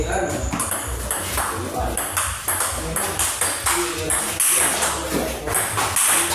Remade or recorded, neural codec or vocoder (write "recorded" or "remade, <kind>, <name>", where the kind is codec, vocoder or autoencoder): recorded